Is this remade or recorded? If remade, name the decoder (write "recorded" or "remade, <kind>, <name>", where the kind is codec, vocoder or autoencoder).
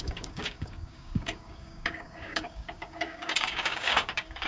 remade, codec, DAC